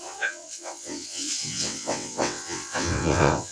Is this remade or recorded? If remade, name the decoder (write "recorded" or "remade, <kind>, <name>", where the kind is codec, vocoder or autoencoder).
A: remade, vocoder, WaveNeXt